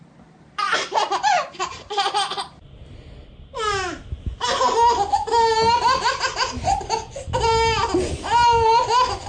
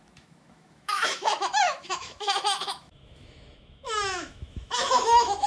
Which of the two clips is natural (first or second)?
first